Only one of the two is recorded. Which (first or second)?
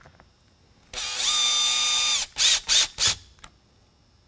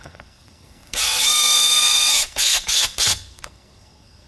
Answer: first